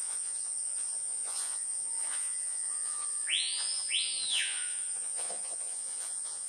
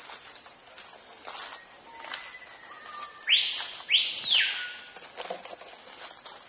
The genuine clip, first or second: second